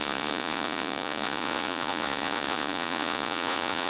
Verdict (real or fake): fake